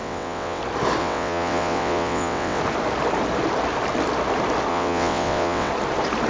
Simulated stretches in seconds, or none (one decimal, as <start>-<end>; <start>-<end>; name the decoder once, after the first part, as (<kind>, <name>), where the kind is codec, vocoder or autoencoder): 0.0-0.6 (vocoder, WaveNeXt); 1.0-2.6; 4.7-5.7